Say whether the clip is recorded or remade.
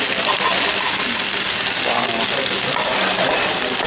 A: recorded